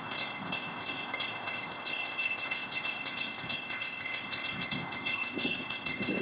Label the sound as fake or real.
fake